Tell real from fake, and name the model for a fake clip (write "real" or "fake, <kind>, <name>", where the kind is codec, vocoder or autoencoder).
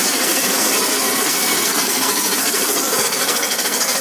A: fake, codec, SNAC